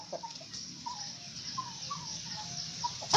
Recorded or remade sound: recorded